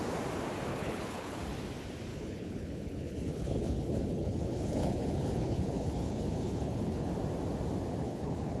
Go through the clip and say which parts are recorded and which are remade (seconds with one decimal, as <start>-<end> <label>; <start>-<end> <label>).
0.0-0.7 recorded; 0.7-1.4 remade; 1.4-2.1 recorded; 2.1-7.1 remade; 7.1-8.0 recorded; 8.0-8.6 remade